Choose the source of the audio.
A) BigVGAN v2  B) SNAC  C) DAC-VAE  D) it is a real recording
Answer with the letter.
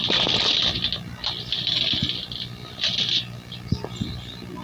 D